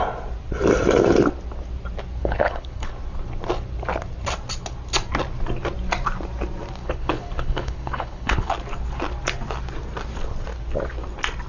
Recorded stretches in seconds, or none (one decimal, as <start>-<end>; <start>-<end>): 0.0-2.2; 2.9-6.8; 8.5-11.5